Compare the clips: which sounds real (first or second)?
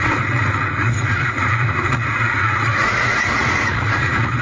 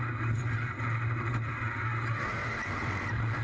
second